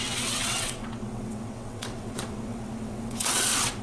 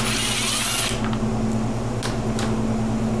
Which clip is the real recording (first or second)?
second